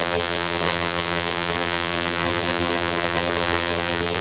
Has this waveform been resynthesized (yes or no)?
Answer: yes